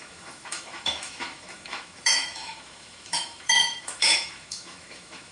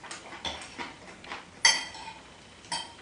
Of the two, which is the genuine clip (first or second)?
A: second